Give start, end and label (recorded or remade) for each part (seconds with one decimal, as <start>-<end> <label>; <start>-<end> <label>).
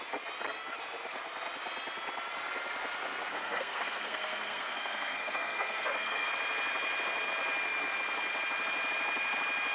0.0-3.3 recorded; 3.3-6.3 remade; 6.3-9.7 recorded